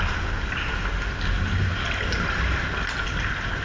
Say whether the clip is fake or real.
real